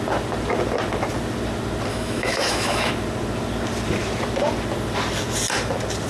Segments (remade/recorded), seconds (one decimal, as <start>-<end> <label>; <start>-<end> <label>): 0.0-1.9 recorded; 1.9-2.9 remade; 2.9-6.1 recorded

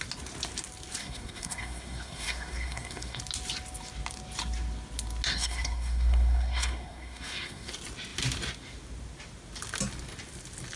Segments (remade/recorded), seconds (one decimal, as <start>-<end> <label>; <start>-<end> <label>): 0.0-1.0 recorded; 1.0-3.2 remade; 3.2-5.3 recorded; 5.3-7.7 remade; 7.7-10.8 recorded

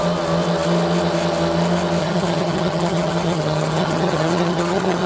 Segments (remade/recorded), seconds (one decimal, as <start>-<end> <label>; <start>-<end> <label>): 0.0-2.0 recorded; 2.0-5.1 remade

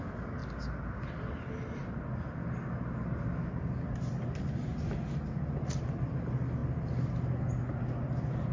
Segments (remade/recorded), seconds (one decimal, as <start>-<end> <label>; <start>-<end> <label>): 0.0-8.5 recorded

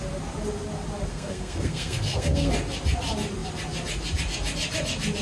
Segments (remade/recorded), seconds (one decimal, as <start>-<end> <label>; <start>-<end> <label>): 0.0-1.1 recorded; 1.1-2.5 remade; 2.5-5.2 recorded

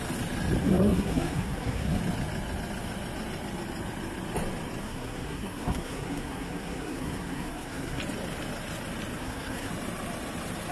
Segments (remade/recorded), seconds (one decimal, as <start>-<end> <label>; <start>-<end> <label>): 0.0-0.6 recorded; 0.6-2.0 remade; 2.0-4.8 recorded; 4.8-8.0 remade; 8.0-9.2 recorded; 9.2-9.7 remade; 9.7-10.7 recorded